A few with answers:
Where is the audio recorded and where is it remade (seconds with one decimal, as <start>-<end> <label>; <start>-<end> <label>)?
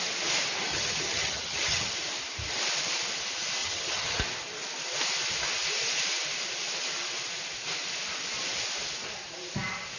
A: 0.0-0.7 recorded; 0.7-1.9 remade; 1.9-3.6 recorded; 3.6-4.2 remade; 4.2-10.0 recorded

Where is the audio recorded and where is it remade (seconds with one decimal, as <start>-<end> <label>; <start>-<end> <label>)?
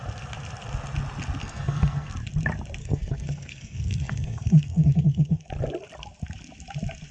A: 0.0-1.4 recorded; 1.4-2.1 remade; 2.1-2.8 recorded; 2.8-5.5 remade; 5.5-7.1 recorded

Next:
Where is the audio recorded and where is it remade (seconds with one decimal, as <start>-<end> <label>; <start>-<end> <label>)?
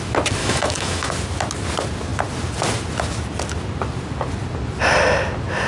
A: 0.0-0.4 recorded; 0.4-1.1 remade; 1.1-5.7 recorded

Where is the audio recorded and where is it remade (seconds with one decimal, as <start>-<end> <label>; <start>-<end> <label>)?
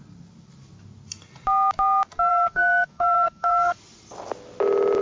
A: 0.0-2.3 recorded; 2.3-3.8 remade; 3.8-5.0 recorded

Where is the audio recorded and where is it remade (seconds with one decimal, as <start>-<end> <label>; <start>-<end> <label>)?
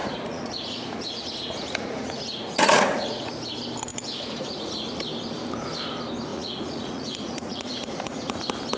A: 0.0-3.3 remade; 3.3-3.9 recorded; 3.9-4.9 remade; 4.9-6.3 recorded; 6.3-8.4 remade; 8.4-8.8 recorded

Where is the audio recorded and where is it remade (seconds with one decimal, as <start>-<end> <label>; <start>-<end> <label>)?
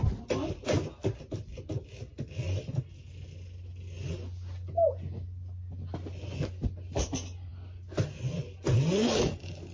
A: 0.0-9.7 recorded